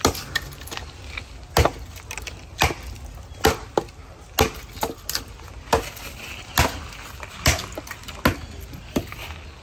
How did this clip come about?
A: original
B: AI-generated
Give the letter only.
A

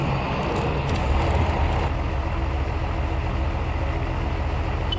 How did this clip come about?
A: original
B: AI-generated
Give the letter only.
A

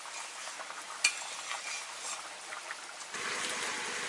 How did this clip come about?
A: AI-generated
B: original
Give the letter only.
B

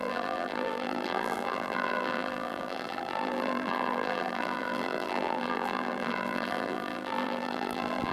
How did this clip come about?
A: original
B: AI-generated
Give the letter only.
B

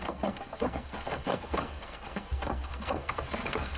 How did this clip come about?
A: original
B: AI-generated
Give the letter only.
B